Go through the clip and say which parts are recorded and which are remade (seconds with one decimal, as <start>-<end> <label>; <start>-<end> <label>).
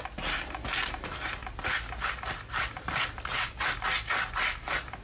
0.0-5.0 recorded